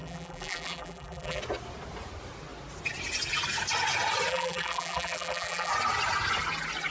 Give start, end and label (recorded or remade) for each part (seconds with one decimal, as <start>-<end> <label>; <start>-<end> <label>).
0.0-1.4 remade; 1.4-4.3 recorded; 4.3-5.7 remade; 5.7-6.9 recorded